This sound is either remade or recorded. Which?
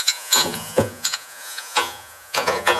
remade